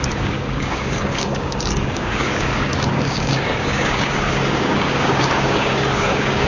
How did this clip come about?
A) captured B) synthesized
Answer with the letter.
B